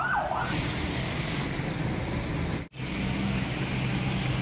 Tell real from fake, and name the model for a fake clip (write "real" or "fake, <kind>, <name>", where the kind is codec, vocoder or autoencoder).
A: real